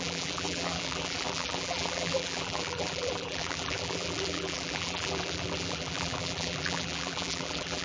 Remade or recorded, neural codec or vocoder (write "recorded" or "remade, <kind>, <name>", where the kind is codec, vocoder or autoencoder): remade, vocoder, BigVGAN v2